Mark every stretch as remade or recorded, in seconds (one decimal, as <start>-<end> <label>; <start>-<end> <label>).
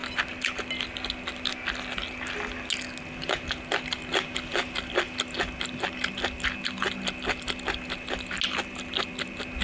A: 0.0-9.6 recorded